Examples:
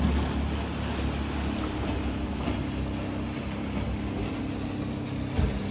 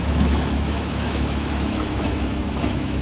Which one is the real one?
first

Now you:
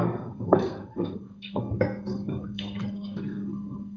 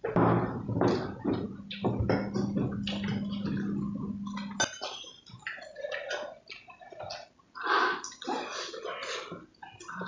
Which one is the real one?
second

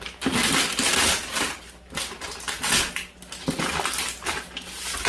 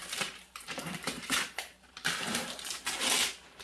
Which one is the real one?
first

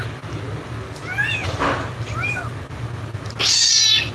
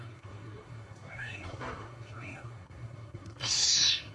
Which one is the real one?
first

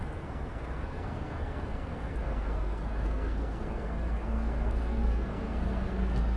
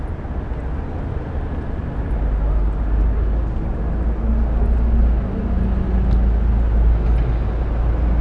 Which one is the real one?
second